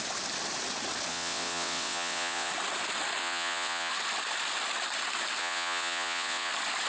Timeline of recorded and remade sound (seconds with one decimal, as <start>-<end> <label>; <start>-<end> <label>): 0.0-1.1 recorded; 1.1-2.5 remade; 2.5-3.2 recorded; 3.2-3.9 remade; 3.9-5.4 recorded; 5.4-6.5 remade; 6.5-6.9 recorded